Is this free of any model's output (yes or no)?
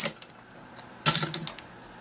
yes